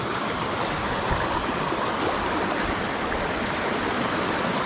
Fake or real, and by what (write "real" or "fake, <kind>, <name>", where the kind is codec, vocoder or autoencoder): real